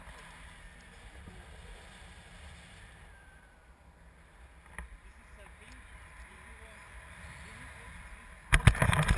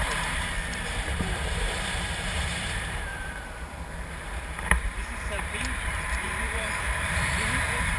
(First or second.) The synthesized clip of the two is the second